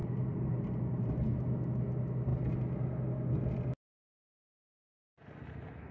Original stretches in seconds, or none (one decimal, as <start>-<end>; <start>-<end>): 1.1-5.9